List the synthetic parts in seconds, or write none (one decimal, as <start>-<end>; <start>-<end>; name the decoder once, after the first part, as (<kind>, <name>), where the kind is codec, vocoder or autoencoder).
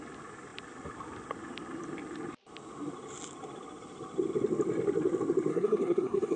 5.5-6.4 (codec, SNAC)